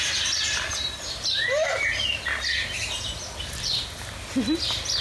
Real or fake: real